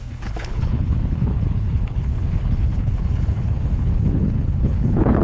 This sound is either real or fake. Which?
fake